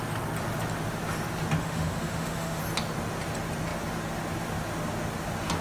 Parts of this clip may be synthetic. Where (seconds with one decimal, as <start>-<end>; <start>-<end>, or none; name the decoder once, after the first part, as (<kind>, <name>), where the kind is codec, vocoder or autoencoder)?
1.6-2.6 (autoencoder, DAC-VAE)